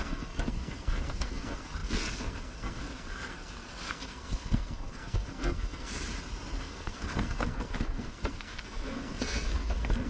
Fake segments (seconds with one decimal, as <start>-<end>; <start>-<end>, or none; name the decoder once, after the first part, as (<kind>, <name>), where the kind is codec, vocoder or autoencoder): 0.0-5.9 (codec, SNAC); 6.6-10.1